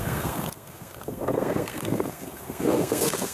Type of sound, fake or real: fake